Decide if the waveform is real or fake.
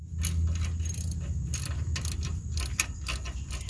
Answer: real